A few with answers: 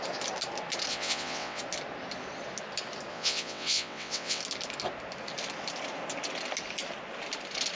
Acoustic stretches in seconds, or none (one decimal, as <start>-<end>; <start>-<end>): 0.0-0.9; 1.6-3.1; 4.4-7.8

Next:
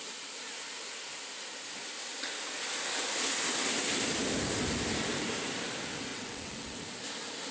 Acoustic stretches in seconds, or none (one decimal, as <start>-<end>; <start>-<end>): 0.0-6.1; 6.8-7.5

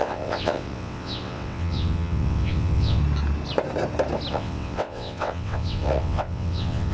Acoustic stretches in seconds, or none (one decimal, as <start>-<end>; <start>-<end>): 3.0-4.3

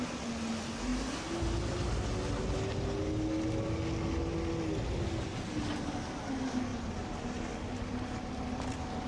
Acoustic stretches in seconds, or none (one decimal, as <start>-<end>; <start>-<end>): 0.0-9.1